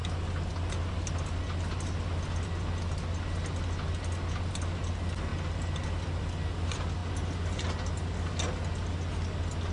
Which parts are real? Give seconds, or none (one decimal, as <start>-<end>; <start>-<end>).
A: 0.0-9.7